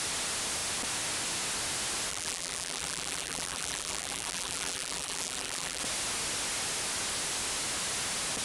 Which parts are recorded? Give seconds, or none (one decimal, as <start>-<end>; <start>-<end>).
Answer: 0.0-2.1; 5.8-8.4